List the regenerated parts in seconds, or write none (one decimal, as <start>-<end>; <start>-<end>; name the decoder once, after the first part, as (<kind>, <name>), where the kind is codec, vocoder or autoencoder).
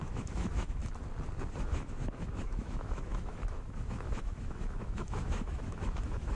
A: 0.0-0.8 (autoencoder, DAC-VAE); 1.6-6.4